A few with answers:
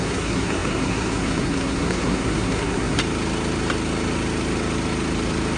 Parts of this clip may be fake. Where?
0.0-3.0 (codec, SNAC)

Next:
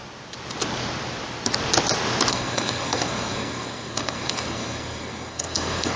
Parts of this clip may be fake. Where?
2.3-6.0 (codec, SNAC)

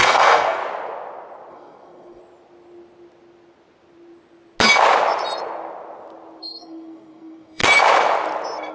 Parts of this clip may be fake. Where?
0.0-0.6 (codec, SNAC); 1.5-2.2; 6.4-7.6